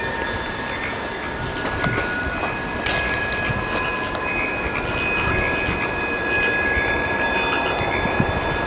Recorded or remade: recorded